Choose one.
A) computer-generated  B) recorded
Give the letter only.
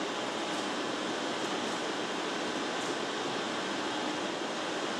B